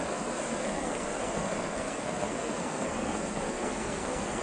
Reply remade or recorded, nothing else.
remade